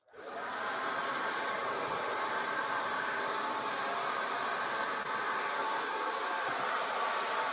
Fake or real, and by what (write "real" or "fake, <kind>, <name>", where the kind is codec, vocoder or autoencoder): real